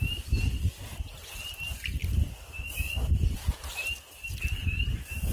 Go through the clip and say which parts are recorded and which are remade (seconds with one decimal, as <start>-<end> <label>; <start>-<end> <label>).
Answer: 0.0-2.0 recorded; 2.0-5.3 remade